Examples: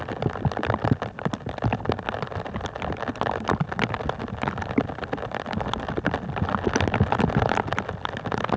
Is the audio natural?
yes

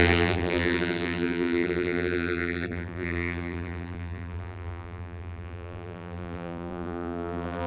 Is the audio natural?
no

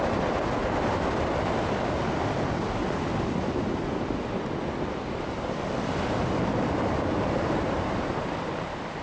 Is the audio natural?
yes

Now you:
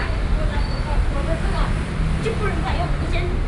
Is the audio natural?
no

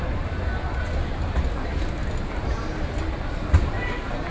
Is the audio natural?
yes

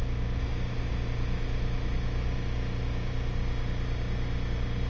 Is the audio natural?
yes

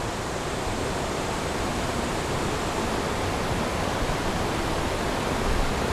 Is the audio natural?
yes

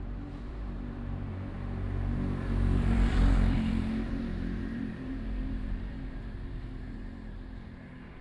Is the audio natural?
no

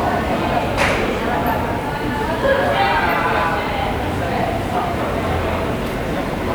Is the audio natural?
no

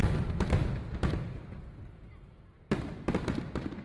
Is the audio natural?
yes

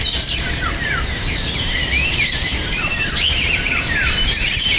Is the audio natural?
no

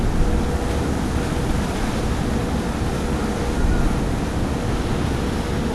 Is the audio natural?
yes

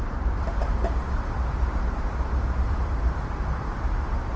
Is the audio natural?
no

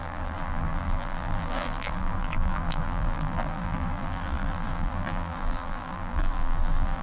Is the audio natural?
no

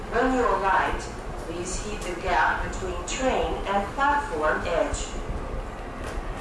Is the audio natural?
yes